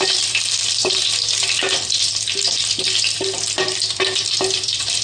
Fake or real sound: fake